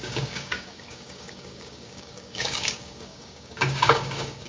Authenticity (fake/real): fake